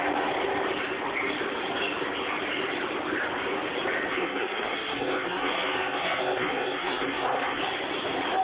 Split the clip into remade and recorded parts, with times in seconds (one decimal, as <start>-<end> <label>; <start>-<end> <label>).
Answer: 0.0-4.1 recorded; 4.1-7.6 remade; 7.6-8.4 recorded

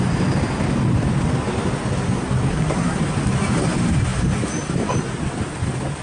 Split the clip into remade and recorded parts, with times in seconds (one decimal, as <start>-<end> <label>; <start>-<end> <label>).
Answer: 0.0-2.5 recorded; 2.5-3.0 remade; 3.0-6.0 recorded

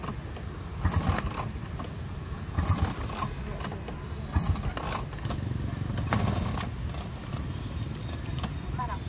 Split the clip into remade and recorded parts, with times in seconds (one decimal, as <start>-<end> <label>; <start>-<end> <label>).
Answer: 0.0-9.1 recorded

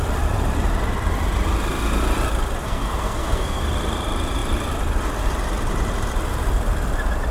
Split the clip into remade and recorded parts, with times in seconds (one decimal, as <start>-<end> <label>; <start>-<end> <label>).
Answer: 0.0-2.6 recorded; 2.6-3.6 remade; 3.6-7.3 recorded

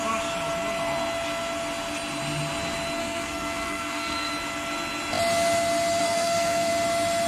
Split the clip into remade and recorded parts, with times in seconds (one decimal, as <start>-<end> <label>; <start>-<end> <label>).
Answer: 0.0-3.0 recorded; 3.0-4.3 remade; 4.3-6.0 recorded; 6.0-6.7 remade; 6.7-7.3 recorded

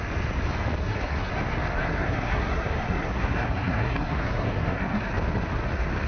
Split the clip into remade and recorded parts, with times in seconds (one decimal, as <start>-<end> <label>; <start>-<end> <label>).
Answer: 0.0-0.8 recorded; 0.8-1.3 remade; 1.3-1.8 recorded; 1.8-5.1 remade; 5.1-6.1 recorded

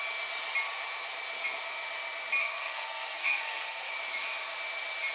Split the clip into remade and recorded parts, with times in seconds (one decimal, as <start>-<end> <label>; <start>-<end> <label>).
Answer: 0.0-2.4 recorded; 2.4-3.9 remade; 3.9-5.1 recorded

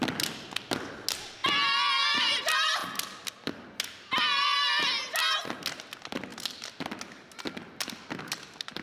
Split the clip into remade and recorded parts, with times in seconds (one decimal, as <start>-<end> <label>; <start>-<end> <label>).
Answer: 0.0-8.8 recorded